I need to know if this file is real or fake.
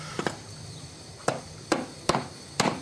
real